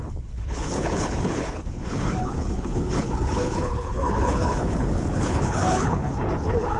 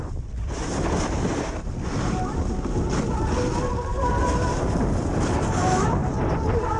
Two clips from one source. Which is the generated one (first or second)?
first